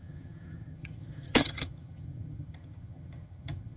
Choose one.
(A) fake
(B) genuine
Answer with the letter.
A